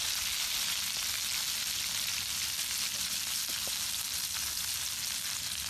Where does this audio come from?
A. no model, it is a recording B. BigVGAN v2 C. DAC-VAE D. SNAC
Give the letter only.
A